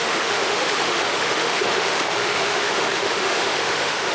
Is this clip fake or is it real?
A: fake